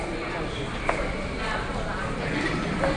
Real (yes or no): yes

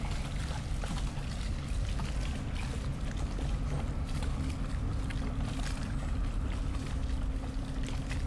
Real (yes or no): yes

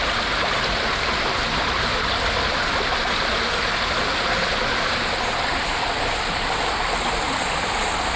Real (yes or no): yes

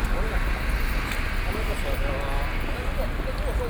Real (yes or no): yes